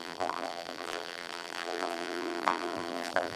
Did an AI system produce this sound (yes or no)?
yes